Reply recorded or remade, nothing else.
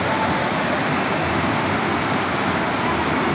recorded